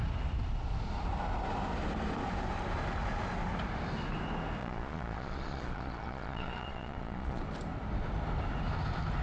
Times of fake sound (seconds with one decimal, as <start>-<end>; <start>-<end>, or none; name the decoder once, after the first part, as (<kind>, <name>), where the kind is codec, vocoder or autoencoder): 4.6-7.4 (vocoder, Vocos)